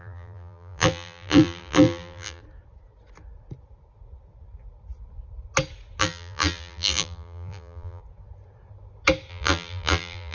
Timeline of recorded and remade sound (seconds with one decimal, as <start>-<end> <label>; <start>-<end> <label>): 0.0-2.4 remade; 2.4-6.0 recorded; 6.0-8.0 remade; 8.0-9.3 recorded; 9.3-10.3 remade